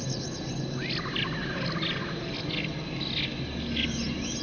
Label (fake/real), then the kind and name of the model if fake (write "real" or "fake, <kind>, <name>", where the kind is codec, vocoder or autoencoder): real